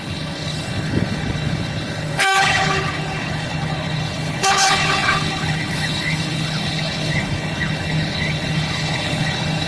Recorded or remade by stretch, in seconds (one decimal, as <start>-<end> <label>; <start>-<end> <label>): 0.0-9.7 remade